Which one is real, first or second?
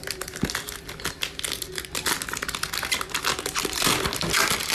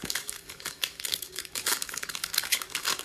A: first